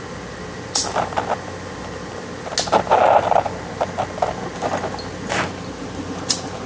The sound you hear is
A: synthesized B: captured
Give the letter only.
B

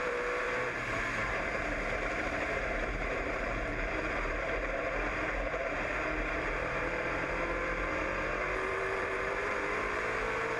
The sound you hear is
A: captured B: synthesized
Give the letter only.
B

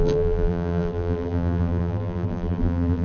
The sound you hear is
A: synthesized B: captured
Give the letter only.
A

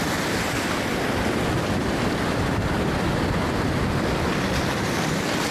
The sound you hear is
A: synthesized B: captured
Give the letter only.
B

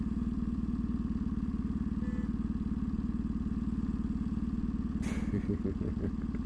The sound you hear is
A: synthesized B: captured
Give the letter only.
B